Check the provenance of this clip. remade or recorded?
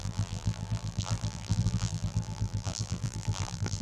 remade